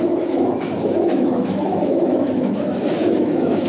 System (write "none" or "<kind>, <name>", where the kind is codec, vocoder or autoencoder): autoencoder, DAC-VAE